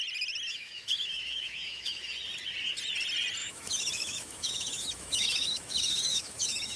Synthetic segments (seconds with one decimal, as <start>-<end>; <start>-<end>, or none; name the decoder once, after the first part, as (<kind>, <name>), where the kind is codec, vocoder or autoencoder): 0.5-2.1 (autoencoder, DAC-VAE); 3.4-6.8